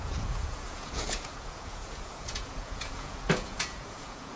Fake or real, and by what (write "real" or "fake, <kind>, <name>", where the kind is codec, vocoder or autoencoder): fake, vocoder, Vocos